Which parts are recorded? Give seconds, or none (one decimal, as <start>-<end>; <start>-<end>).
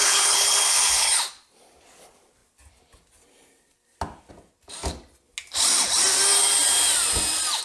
1.2-7.6